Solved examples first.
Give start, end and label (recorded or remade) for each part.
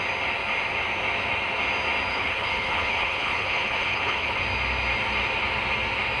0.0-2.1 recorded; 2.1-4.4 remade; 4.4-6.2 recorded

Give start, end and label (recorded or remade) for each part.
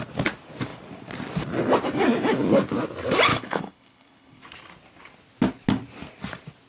0.0-3.3 recorded; 3.3-4.4 remade; 4.4-6.7 recorded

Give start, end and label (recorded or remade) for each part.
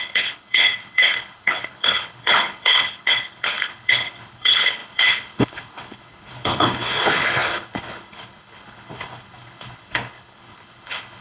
0.0-11.2 remade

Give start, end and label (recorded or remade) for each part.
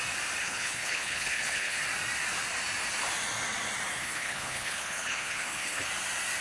0.0-0.4 recorded; 0.4-1.8 remade; 1.8-4.0 recorded; 4.0-5.9 remade; 5.9-6.4 recorded